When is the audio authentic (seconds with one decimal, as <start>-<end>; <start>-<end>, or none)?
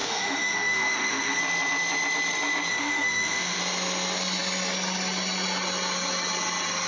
1.4-2.7; 3.6-6.9